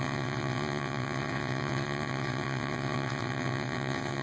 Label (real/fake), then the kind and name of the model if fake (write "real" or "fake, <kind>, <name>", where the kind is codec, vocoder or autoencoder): fake, vocoder, WaveNeXt